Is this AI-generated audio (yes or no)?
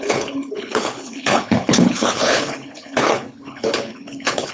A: yes